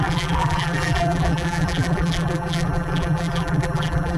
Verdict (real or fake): fake